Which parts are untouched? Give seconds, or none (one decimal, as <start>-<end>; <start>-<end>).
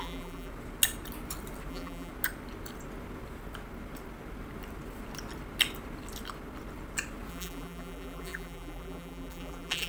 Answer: 0.5-1.7; 2.1-7.3